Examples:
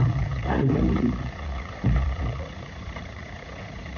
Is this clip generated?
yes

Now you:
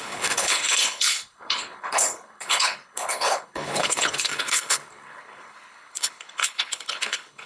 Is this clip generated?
yes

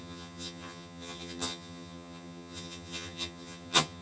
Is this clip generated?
yes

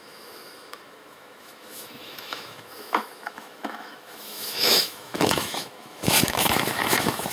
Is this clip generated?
yes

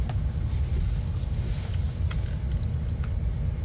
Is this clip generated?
no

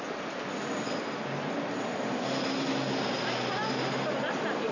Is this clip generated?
no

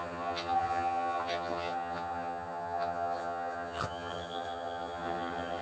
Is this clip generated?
yes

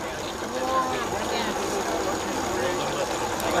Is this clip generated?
no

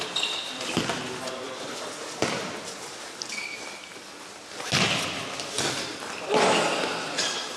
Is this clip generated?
no